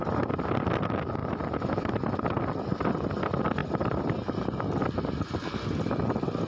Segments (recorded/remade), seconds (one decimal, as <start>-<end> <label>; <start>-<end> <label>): 0.0-6.5 recorded